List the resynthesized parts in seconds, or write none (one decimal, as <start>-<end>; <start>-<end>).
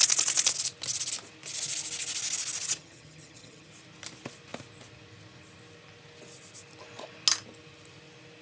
2.6-3.7